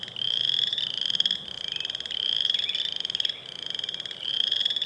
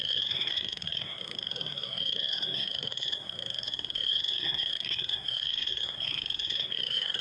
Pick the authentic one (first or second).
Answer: first